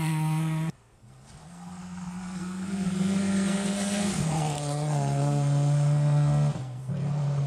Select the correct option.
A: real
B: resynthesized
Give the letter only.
B